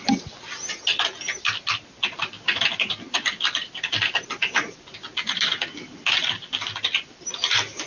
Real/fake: real